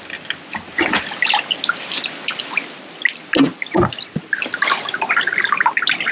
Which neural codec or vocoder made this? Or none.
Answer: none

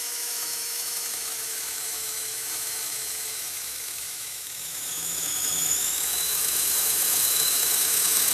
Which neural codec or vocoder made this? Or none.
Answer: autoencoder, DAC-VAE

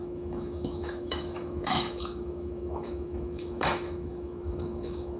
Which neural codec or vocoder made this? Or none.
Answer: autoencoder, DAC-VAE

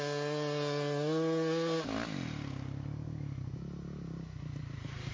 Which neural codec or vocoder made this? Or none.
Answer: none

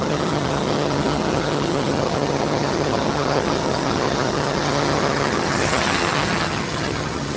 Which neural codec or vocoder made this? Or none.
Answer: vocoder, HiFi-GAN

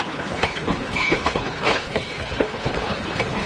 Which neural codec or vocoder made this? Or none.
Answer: codec, HILCodec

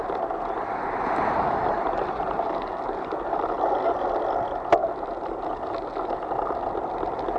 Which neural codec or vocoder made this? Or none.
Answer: none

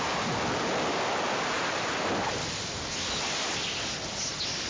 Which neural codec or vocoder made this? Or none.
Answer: none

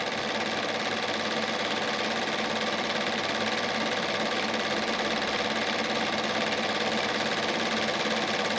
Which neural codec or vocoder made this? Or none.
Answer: none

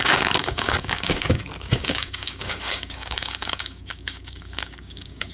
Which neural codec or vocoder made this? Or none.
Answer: codec, DAC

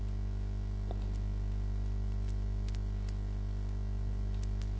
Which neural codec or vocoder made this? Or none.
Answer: none